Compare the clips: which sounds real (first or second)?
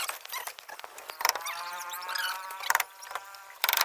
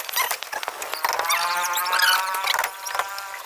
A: second